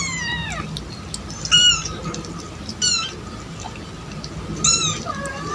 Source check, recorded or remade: recorded